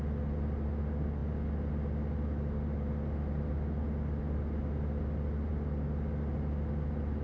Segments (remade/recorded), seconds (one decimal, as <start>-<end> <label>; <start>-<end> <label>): 0.0-7.2 recorded